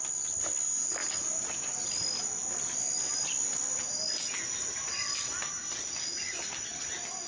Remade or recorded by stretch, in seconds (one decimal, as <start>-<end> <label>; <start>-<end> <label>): 0.0-7.3 recorded